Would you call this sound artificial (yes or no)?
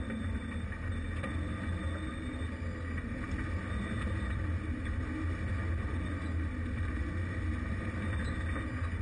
no